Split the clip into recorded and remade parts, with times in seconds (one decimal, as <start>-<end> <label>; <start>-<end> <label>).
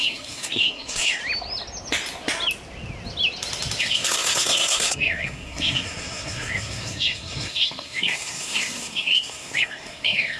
0.0-1.2 remade; 1.2-3.8 recorded; 3.8-10.4 remade